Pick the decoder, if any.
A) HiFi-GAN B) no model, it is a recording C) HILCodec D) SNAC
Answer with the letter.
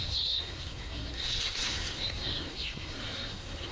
D